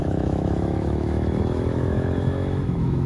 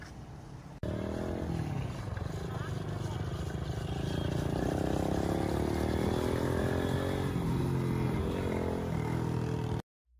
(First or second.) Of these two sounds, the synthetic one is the first